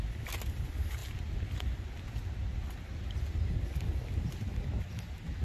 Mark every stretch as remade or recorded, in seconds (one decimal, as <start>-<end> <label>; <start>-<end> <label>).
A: 0.0-5.4 recorded